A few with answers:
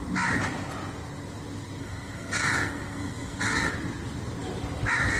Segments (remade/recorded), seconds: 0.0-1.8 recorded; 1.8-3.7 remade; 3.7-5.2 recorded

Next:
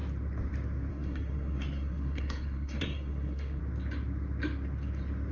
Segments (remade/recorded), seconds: 0.0-0.9 recorded; 0.9-3.6 remade; 3.6-5.3 recorded

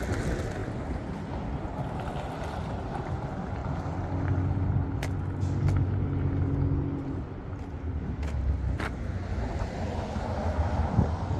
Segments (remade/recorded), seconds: 0.0-11.4 recorded

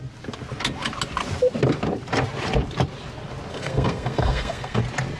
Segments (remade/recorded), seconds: 0.0-3.5 recorded; 3.5-4.8 remade; 4.8-5.2 recorded